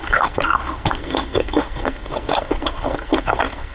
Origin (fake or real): fake